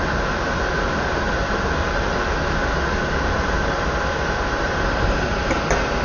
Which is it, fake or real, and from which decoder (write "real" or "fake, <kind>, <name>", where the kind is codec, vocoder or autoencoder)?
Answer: real